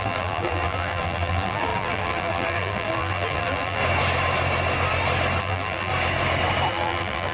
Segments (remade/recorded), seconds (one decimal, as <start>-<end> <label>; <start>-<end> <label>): 0.0-3.8 remade; 3.8-5.4 recorded; 5.4-5.9 remade; 5.9-6.7 recorded; 6.7-7.3 remade